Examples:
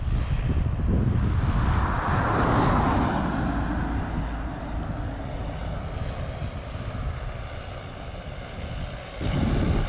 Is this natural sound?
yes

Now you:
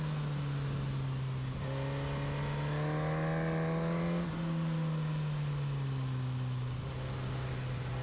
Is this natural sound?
yes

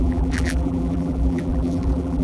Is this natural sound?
no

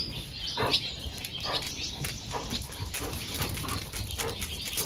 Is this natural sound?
yes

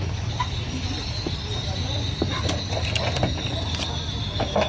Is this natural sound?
yes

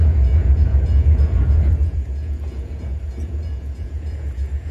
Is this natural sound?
no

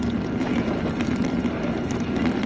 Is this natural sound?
yes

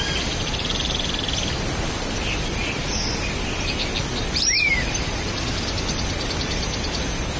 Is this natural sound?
yes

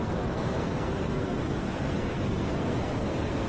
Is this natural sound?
no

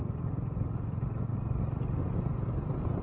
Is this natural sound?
yes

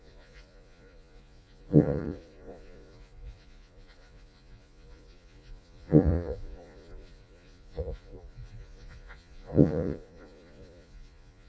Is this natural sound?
no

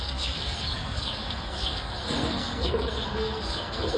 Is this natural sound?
no